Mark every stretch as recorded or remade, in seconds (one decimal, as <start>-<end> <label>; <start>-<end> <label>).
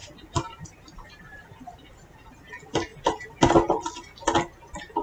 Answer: 0.0-2.5 remade; 2.5-5.0 recorded